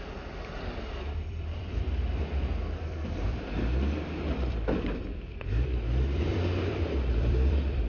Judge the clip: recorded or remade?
remade